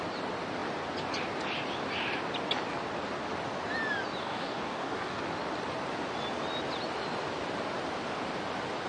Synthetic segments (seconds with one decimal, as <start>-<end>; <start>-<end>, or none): 4.2-5.2